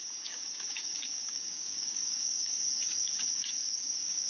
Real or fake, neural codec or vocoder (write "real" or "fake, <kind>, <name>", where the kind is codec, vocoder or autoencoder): fake, codec, DAC